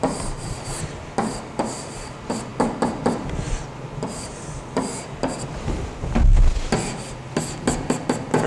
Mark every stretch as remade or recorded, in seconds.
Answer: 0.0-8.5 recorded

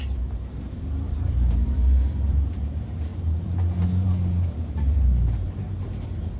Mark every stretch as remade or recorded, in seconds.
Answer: 0.0-6.4 remade